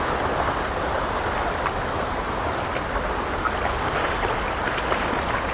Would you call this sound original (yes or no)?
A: yes